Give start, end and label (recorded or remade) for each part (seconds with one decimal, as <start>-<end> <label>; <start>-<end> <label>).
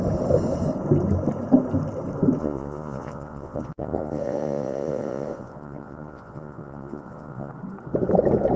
0.0-2.4 recorded; 2.4-7.5 remade; 7.5-8.6 recorded